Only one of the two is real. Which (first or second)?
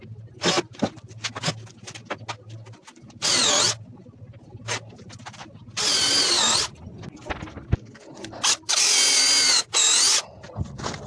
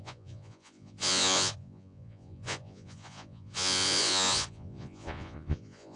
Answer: first